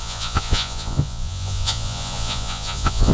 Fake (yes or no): yes